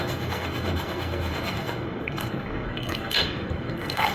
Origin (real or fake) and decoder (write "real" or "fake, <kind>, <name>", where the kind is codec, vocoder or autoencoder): fake, codec, SNAC